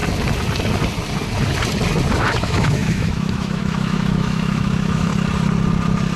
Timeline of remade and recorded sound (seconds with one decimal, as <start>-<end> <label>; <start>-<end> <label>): 0.0-2.4 recorded; 2.4-5.1 remade; 5.1-6.2 recorded